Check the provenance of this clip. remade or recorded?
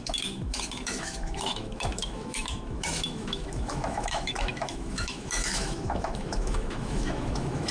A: remade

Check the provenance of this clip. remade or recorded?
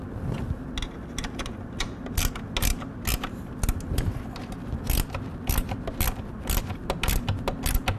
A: recorded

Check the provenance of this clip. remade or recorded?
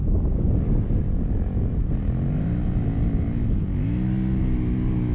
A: recorded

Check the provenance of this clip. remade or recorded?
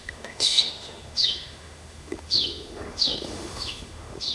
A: remade